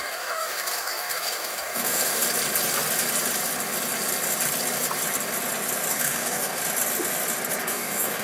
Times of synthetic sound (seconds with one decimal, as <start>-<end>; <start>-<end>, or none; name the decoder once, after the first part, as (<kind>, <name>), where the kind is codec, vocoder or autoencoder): 0.0-2.2 (codec, DAC); 5.9-6.6; 7.6-8.2